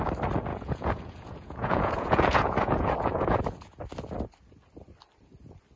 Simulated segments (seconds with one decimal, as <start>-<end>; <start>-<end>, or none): 0.5-3.8